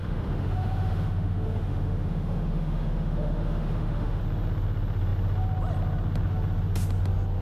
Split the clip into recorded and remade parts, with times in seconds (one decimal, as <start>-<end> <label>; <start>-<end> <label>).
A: 0.0-4.2 remade; 4.2-7.4 recorded